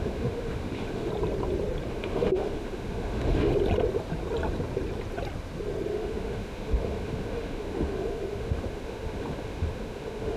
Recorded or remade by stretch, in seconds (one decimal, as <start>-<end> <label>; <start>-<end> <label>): 0.0-1.1 remade; 1.1-1.9 recorded; 1.9-3.5 remade; 3.5-5.9 recorded; 5.9-10.4 remade

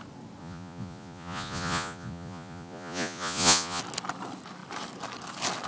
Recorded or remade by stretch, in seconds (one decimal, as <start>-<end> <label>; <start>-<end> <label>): 0.0-0.4 recorded; 0.4-3.8 remade; 3.8-5.7 recorded

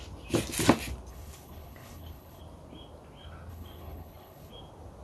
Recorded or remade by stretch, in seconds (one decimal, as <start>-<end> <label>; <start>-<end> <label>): 0.0-1.1 recorded; 1.1-2.4 remade; 2.4-3.5 recorded; 3.5-4.5 remade; 4.5-5.0 recorded

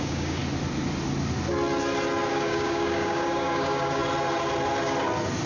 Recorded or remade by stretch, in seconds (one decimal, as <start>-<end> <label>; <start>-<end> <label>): 0.0-0.4 remade; 0.4-2.3 recorded; 2.3-4.0 remade; 4.0-5.5 recorded

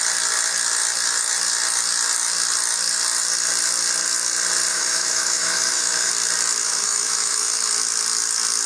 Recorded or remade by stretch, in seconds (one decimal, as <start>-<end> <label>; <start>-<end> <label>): 0.0-4.7 recorded; 4.7-6.1 remade; 6.1-6.6 recorded; 6.6-7.7 remade; 7.7-8.7 recorded